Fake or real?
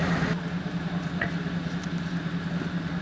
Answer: real